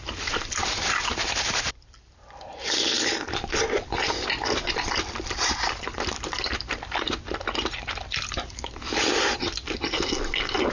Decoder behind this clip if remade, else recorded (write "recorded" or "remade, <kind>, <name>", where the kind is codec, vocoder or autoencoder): remade, vocoder, BigVGAN v2